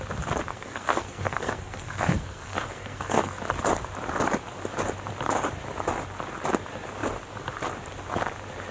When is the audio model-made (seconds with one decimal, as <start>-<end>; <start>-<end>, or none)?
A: 0.5-3.4